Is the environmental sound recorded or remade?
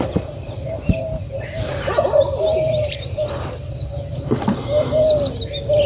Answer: remade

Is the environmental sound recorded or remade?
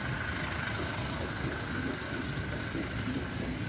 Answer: recorded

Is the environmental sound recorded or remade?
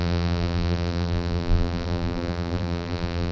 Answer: remade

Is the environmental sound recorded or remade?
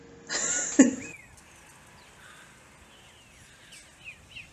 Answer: recorded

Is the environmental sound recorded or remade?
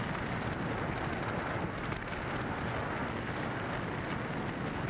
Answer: recorded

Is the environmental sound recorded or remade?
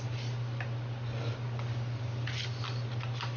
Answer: recorded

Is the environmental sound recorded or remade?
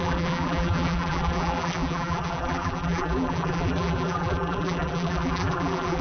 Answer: remade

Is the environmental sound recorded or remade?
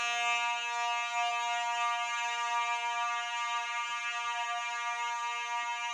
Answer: recorded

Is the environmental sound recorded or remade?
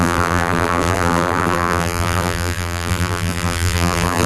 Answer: remade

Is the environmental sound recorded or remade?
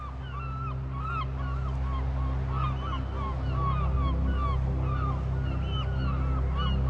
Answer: recorded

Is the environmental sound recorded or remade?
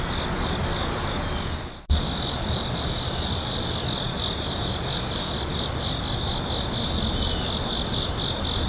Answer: recorded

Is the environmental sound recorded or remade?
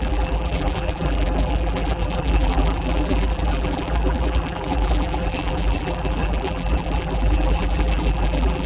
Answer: remade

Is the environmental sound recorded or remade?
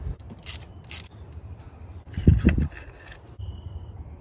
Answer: remade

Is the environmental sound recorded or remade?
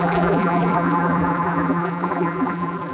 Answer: remade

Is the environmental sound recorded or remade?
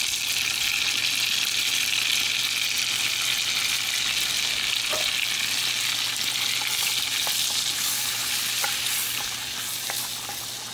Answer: recorded